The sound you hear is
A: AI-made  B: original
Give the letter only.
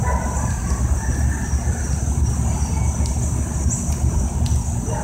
B